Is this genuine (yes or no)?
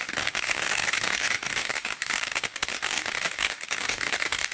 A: no